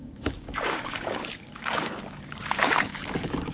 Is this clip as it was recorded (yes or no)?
no